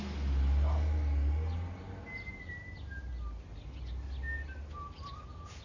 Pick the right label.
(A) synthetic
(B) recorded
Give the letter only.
B